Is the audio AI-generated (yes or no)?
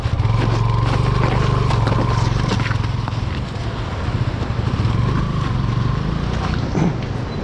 no